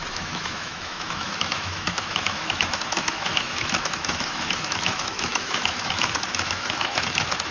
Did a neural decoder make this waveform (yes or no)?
yes